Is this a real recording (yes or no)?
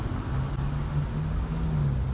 yes